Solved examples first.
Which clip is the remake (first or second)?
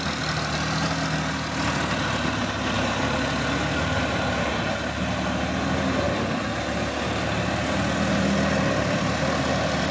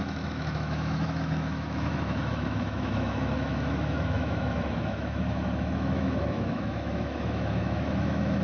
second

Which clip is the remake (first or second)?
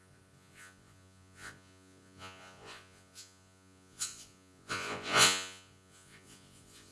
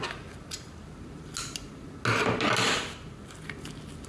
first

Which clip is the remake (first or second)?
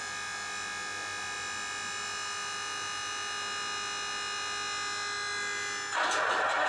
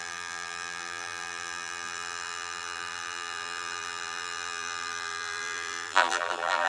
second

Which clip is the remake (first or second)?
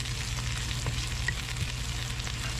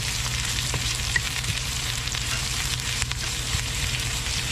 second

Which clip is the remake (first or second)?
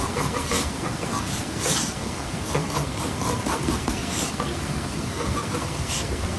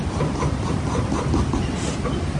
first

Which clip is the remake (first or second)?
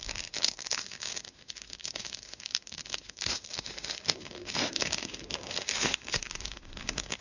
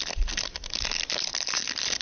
first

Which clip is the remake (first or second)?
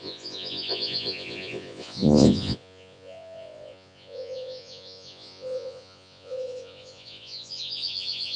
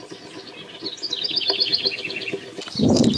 first